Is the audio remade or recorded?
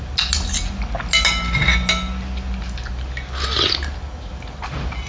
recorded